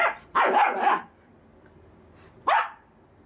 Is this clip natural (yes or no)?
yes